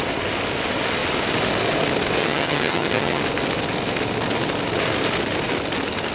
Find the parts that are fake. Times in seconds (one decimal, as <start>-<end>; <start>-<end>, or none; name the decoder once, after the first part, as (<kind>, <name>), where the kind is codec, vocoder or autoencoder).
2.2-3.2 (vocoder, HiFi-GAN)